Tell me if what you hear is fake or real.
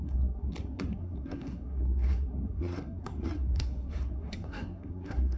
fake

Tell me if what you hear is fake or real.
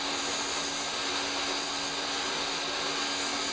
real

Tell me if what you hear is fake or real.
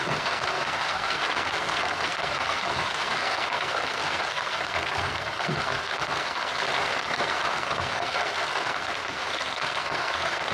fake